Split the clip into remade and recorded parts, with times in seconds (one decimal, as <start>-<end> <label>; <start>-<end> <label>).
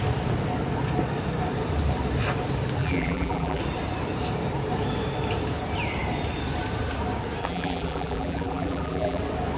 0.0-2.8 recorded; 2.8-3.6 remade; 3.6-7.4 recorded; 7.4-9.2 remade; 9.2-9.6 recorded